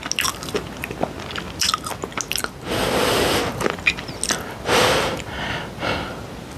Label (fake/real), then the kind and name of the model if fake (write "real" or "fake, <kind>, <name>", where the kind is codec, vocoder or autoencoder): real